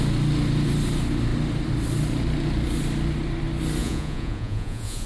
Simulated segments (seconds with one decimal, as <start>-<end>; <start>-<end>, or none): 3.8-5.1